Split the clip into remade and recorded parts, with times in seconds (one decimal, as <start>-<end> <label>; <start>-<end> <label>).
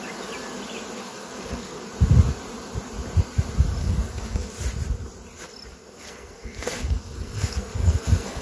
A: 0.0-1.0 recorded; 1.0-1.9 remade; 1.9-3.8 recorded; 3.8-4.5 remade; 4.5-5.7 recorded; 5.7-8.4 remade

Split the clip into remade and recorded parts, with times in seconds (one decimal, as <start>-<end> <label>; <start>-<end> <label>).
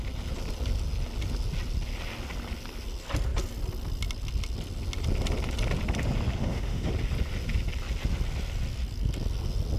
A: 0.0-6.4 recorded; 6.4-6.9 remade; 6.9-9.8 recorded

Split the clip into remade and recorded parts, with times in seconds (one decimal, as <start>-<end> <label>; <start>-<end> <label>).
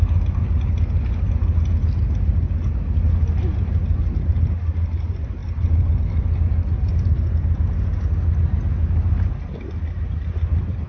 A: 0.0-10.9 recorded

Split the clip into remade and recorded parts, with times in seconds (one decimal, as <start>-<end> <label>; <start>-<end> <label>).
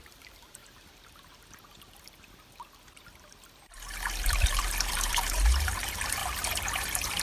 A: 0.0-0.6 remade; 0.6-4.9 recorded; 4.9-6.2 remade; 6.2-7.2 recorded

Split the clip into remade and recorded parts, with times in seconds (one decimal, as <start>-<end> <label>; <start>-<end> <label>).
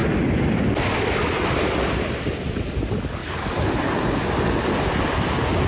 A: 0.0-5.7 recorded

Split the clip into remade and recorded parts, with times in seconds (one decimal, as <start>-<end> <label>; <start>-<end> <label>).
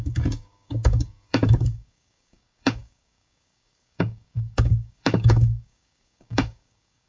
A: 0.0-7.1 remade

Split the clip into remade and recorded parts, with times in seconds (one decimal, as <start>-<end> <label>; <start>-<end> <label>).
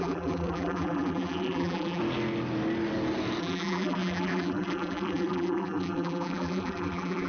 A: 0.0-2.0 remade; 2.0-3.4 recorded; 3.4-7.3 remade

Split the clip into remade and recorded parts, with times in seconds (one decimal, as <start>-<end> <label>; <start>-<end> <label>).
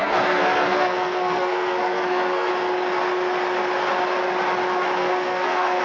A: 0.0-2.5 remade; 2.5-5.0 recorded; 5.0-5.8 remade